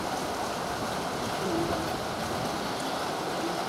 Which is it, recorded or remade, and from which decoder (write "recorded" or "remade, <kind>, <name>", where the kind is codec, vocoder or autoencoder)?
recorded